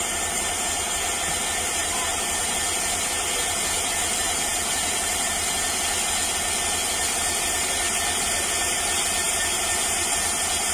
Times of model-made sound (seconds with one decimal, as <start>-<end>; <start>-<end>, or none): none